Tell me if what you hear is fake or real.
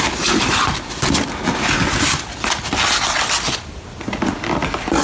real